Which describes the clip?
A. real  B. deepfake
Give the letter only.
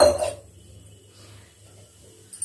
A